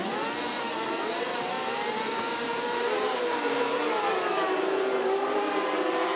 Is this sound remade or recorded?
remade